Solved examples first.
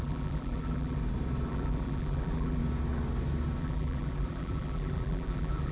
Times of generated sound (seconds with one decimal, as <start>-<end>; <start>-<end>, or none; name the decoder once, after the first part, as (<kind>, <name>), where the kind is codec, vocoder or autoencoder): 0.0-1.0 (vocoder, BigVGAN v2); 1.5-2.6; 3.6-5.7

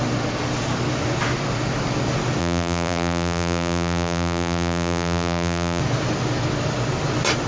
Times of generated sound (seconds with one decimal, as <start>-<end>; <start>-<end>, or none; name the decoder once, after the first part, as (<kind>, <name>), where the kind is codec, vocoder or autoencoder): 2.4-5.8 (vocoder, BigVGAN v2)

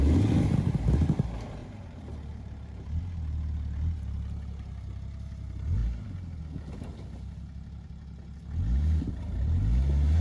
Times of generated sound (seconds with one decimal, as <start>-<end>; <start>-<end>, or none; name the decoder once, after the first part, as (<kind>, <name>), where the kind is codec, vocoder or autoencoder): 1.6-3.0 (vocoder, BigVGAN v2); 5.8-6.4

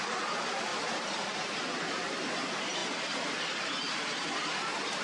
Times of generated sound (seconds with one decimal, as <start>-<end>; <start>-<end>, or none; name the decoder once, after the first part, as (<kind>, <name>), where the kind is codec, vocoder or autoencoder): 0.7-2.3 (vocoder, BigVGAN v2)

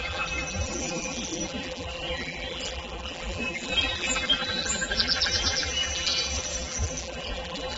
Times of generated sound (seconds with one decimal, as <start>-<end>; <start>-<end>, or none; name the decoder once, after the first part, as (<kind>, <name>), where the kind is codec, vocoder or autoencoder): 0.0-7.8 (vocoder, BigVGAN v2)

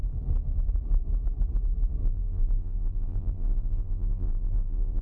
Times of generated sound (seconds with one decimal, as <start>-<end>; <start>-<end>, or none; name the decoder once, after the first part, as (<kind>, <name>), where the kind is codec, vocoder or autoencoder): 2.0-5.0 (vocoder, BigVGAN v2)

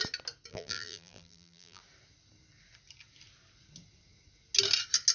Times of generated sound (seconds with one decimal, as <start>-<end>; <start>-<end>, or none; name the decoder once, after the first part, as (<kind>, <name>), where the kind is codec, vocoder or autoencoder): 0.5-1.8 (vocoder, BigVGAN v2)